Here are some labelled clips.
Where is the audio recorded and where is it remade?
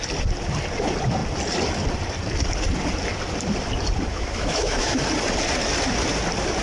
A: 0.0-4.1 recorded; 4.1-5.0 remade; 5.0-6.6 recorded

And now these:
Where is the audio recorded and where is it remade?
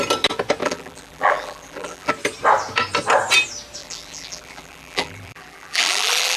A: 0.0-0.6 recorded; 0.6-2.1 remade; 2.1-3.8 recorded; 3.8-6.4 remade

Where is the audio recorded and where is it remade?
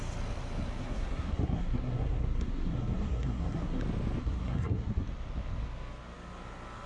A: 0.0-0.8 recorded; 0.8-3.8 remade; 3.8-4.2 recorded; 4.2-5.1 remade; 5.1-6.9 recorded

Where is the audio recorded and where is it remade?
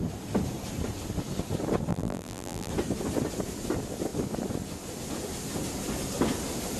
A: 0.0-1.9 recorded; 1.9-2.7 remade; 2.7-6.8 recorded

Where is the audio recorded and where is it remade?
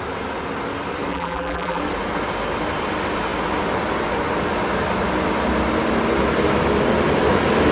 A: 0.0-1.1 recorded; 1.1-1.8 remade; 1.8-7.7 recorded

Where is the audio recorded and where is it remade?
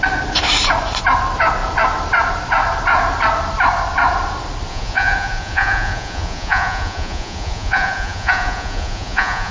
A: 0.0-4.7 recorded; 4.7-9.5 remade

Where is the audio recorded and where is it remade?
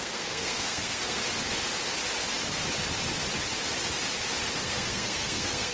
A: 0.0-1.2 remade; 1.2-4.6 recorded; 4.6-5.7 remade